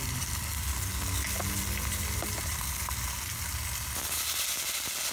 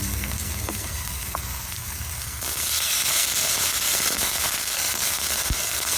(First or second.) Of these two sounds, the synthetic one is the second